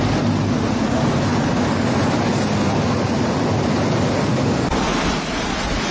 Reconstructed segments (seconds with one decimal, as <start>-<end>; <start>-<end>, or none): none